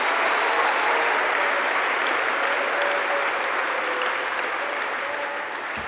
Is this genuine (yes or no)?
yes